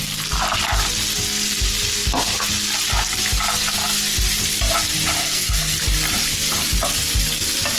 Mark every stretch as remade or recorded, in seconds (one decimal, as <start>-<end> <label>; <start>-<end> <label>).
0.0-5.2 recorded; 5.2-5.8 remade; 5.8-7.8 recorded